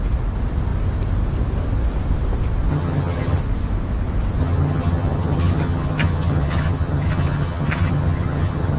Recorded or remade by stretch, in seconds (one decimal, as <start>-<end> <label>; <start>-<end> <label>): 0.0-2.7 recorded; 2.7-3.4 remade; 3.4-4.4 recorded; 4.4-8.8 remade